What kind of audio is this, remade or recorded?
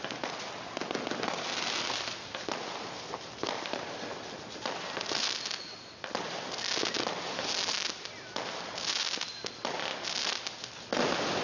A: recorded